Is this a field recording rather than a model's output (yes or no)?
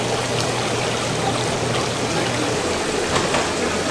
yes